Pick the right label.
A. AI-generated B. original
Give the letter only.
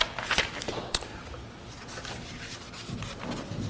B